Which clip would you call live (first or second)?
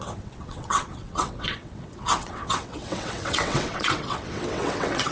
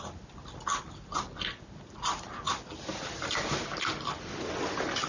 second